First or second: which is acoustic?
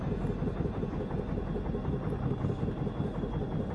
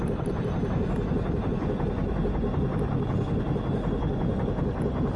first